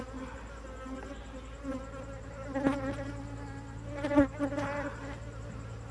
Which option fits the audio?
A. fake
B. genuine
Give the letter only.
B